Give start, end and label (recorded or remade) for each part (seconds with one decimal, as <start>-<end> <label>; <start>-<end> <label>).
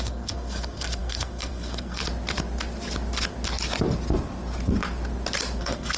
0.0-2.0 remade; 2.0-5.6 recorded; 5.6-6.0 remade